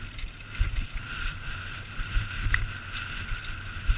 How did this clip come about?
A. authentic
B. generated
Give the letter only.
A